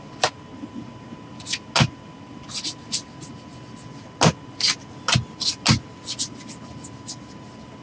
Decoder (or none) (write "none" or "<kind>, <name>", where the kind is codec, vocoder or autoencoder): none